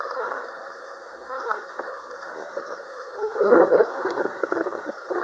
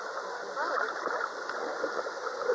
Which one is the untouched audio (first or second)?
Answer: second